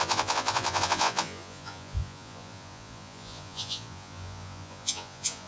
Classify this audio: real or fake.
fake